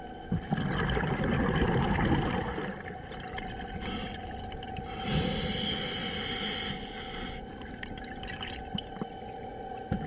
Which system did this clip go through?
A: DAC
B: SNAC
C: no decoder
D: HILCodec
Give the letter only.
C